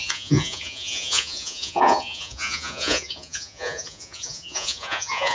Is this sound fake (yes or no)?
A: yes